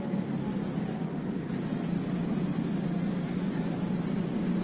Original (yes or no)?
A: yes